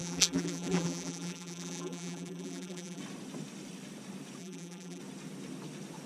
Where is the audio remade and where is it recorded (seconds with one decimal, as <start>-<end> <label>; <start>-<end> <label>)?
0.0-3.0 remade; 3.0-4.4 recorded; 4.4-5.0 remade; 5.0-6.1 recorded